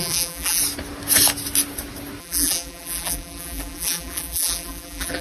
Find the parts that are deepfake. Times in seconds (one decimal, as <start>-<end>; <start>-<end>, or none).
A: 0.0-0.6; 2.2-5.2